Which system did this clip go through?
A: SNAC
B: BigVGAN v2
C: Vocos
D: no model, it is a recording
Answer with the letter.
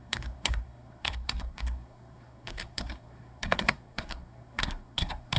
A